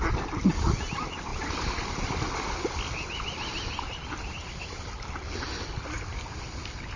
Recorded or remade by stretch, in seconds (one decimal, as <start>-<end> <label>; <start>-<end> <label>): 0.0-7.0 recorded